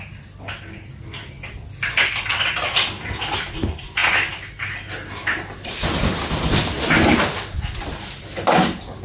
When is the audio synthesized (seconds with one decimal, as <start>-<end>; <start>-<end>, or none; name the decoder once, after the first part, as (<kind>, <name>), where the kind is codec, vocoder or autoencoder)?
none